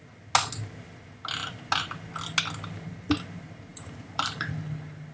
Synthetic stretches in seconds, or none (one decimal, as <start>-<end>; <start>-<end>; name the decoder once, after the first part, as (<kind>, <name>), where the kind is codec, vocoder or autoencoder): 3.7-4.6 (vocoder, BigVGAN v2)

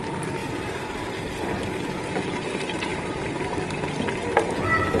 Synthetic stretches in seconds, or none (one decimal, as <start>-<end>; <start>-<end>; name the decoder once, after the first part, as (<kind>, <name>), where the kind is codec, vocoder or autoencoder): none